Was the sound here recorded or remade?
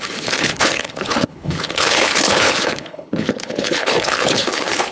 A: remade